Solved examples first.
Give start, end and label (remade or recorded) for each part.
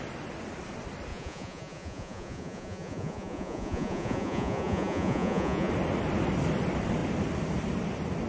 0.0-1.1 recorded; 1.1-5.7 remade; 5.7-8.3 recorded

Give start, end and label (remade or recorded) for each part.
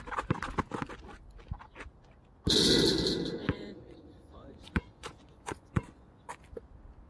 0.0-3.4 recorded; 3.4-6.3 remade; 6.3-7.1 recorded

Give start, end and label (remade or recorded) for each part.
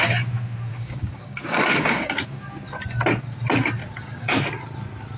0.0-0.7 recorded; 0.7-2.5 remade; 2.5-3.8 recorded; 3.8-4.4 remade; 4.4-5.2 recorded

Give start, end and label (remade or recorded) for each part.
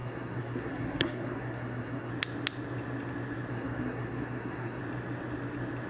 0.0-2.1 remade; 2.1-3.5 recorded; 3.5-4.8 remade; 4.8-5.9 recorded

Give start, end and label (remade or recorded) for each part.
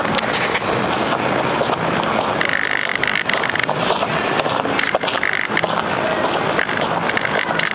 0.0-7.7 recorded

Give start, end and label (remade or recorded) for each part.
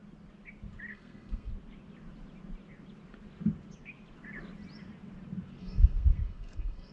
0.0-0.9 recorded; 0.9-1.5 remade; 1.5-5.6 recorded; 5.6-6.9 remade